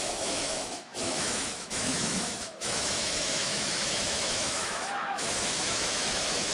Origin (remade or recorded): remade